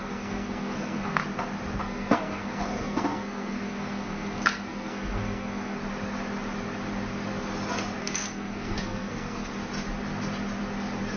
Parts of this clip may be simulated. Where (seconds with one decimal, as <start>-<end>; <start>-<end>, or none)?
0.0-1.2; 1.8-5.8; 8.0-9.5